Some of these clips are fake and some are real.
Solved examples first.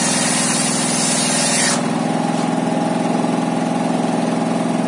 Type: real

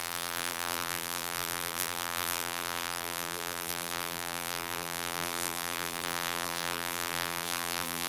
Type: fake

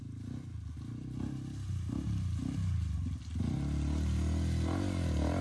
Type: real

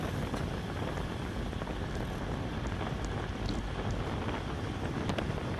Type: real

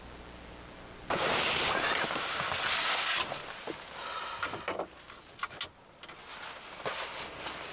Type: real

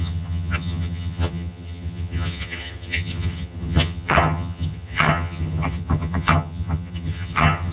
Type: fake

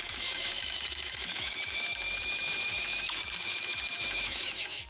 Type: fake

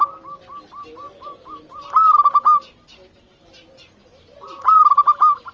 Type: real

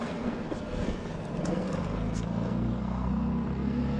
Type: fake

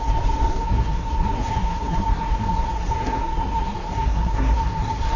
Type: fake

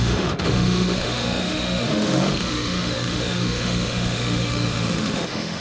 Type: fake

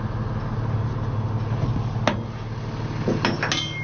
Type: real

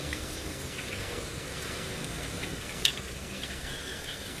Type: fake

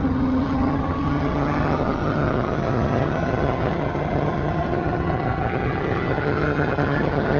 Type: fake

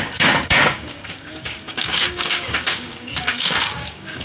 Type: fake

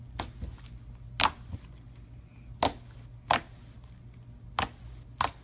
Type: real